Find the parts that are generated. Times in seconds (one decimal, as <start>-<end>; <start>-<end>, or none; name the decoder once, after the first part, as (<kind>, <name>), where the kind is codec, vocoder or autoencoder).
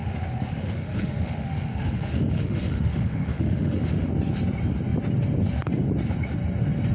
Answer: 0.0-4.1 (autoencoder, DAC-VAE)